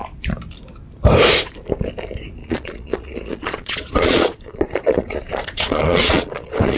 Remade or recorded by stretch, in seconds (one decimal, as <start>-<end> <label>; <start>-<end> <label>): 0.0-2.4 recorded; 2.4-6.8 remade